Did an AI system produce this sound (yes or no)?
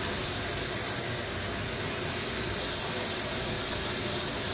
no